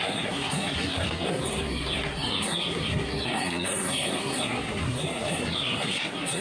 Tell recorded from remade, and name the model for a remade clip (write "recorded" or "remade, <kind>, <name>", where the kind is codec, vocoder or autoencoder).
remade, codec, SNAC